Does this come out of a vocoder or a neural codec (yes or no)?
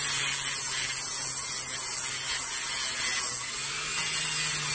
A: no